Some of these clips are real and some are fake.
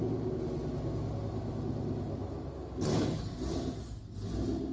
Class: real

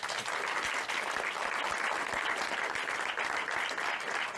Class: real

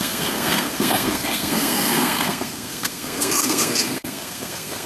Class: fake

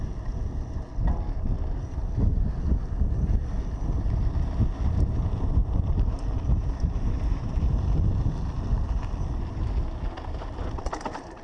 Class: real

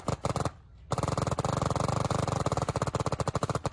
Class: real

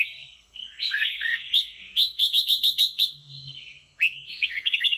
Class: fake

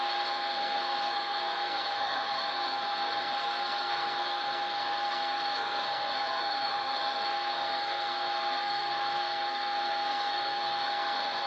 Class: fake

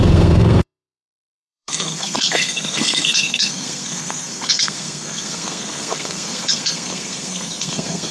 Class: fake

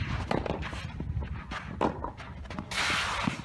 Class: real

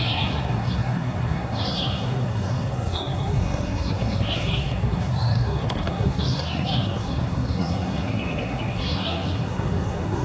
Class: fake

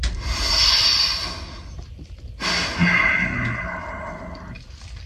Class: real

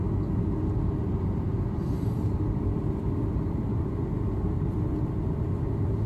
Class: real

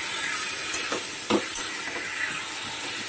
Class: real